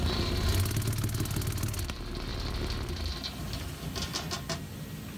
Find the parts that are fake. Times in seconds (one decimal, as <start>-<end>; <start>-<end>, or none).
none